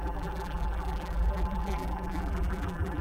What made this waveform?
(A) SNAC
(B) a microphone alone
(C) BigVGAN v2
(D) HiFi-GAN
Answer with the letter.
C